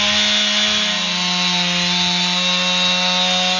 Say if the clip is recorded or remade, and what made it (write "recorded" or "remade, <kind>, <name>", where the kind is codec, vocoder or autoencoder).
recorded